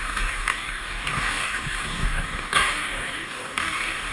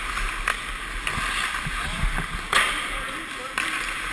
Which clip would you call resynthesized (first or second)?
first